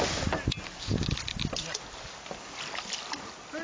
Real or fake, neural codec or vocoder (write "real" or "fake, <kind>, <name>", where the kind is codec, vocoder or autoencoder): real